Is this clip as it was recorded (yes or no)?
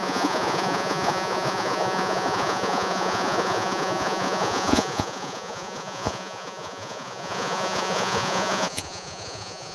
no